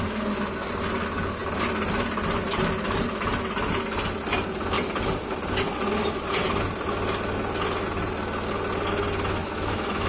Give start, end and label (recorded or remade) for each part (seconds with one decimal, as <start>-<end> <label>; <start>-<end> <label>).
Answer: 0.0-9.4 recorded; 9.4-10.1 remade